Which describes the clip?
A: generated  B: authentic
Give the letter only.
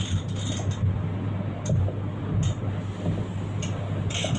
B